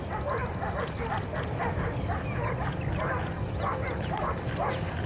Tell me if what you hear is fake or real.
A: real